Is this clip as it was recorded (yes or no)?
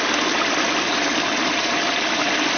yes